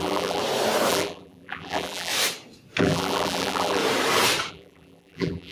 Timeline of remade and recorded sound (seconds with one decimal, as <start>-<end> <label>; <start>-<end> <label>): 0.0-0.4 remade; 0.4-0.9 recorded; 0.9-2.1 remade; 2.1-2.8 recorded; 2.8-3.8 remade; 3.8-4.5 recorded; 4.5-5.5 remade